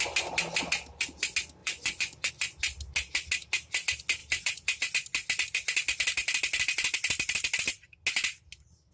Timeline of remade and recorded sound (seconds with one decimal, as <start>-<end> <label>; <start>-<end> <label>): 0.0-1.6 recorded; 1.6-2.3 remade; 2.3-8.9 recorded